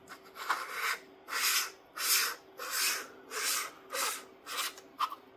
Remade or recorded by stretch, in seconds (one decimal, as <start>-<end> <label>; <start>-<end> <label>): 0.0-5.4 recorded